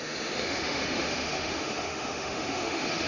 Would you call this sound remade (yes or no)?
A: yes